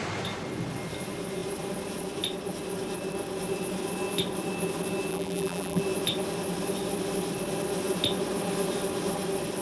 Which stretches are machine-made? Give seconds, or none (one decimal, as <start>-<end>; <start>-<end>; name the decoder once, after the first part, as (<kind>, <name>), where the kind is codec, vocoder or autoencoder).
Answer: 5.1-5.8 (vocoder, BigVGAN v2)